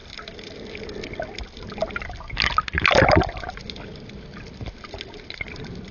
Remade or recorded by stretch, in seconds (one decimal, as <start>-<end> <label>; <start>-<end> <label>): 0.0-5.9 recorded